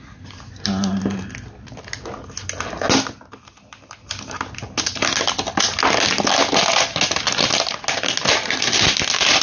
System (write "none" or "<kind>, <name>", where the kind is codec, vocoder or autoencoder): none